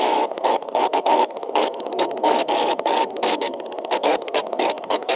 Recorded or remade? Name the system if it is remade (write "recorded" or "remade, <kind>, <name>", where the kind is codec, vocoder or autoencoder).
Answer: remade, codec, SNAC